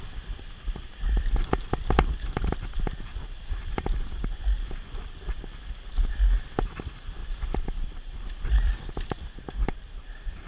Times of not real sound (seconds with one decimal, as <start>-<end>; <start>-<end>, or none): 0.0-10.5